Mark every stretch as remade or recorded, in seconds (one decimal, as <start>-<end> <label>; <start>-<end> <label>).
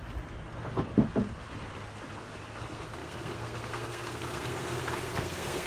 0.0-2.6 recorded; 2.6-5.7 remade